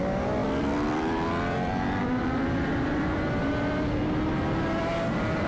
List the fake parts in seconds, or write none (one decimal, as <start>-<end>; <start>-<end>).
0.4-3.5